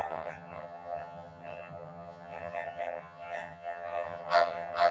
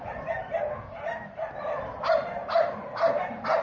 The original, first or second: second